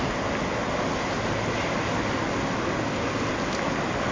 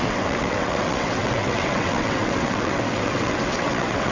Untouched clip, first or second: first